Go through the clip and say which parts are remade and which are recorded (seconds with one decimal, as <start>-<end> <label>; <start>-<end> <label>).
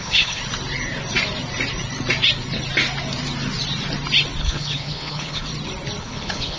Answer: 0.0-0.4 remade; 0.4-4.4 recorded; 4.4-5.5 remade; 5.5-6.0 recorded; 6.0-6.6 remade